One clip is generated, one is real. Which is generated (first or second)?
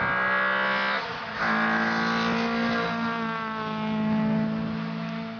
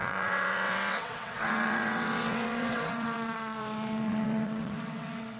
second